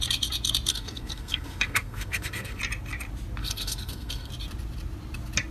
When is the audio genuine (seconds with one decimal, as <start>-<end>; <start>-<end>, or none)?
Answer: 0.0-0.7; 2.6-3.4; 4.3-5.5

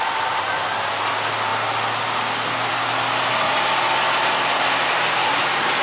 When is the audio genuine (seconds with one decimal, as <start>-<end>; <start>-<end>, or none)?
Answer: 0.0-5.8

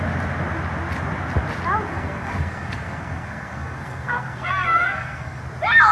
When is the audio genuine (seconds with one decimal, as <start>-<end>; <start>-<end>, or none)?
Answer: 0.0-1.9; 5.4-5.9

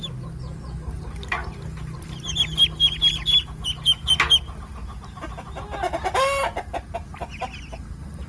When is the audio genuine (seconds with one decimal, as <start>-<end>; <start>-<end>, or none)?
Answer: 0.0-8.3

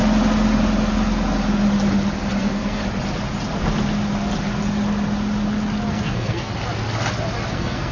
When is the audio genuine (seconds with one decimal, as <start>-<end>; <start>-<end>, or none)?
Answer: 0.0-2.4; 2.8-5.9; 6.5-7.5